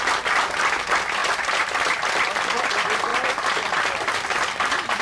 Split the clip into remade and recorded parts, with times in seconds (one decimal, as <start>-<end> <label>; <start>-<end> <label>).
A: 0.0-1.2 recorded; 1.2-2.6 remade; 2.6-3.1 recorded; 3.1-5.0 remade